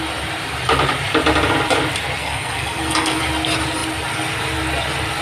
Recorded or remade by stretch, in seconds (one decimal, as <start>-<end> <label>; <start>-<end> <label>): 0.0-2.2 recorded; 2.2-3.2 remade; 3.2-5.2 recorded

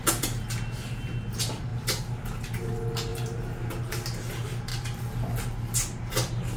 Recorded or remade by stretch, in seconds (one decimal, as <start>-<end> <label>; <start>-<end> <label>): 0.0-3.1 recorded; 3.1-4.0 remade; 4.0-6.6 recorded